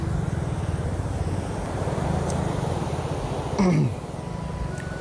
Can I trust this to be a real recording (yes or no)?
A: yes